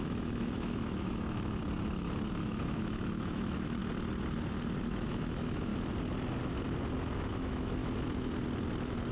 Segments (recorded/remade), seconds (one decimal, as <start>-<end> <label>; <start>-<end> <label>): 0.0-1.6 remade; 1.6-2.3 recorded; 2.3-3.8 remade; 3.8-4.8 recorded; 4.8-5.7 remade; 5.7-7.3 recorded; 7.3-7.8 remade; 7.8-9.1 recorded